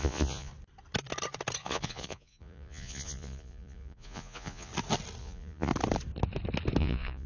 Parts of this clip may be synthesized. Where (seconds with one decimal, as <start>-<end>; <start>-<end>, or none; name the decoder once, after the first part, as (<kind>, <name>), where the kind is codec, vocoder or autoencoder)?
0.0-0.5 (vocoder, Vocos); 1.6-4.7; 5.2-5.7; 6.8-7.3